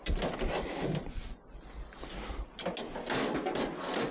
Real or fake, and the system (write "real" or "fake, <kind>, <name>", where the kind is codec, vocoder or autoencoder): real